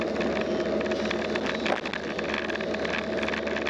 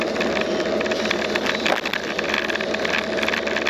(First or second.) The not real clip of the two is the second